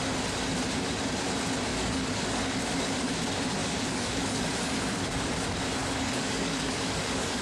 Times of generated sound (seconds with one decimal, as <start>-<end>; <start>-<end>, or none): 1.7-3.1; 3.6-4.5; 5.8-7.4